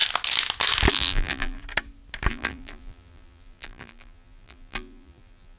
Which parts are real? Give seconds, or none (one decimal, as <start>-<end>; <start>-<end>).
0.0-0.9; 1.6-2.3